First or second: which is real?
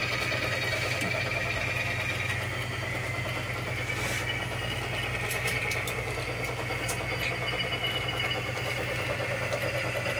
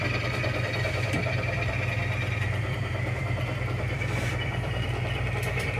first